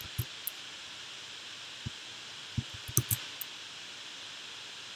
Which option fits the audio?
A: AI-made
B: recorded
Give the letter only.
B